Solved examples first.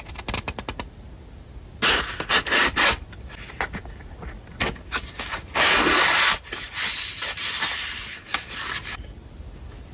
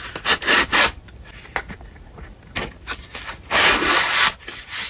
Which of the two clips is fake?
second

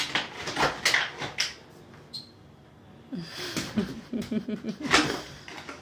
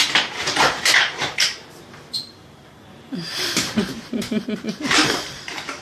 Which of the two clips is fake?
second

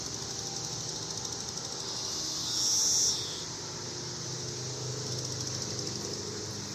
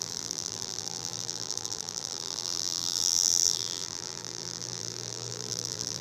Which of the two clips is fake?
second